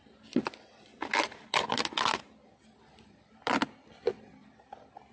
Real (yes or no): yes